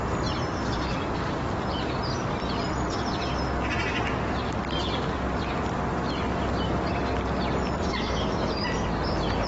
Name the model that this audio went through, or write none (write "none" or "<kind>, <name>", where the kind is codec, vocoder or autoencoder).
none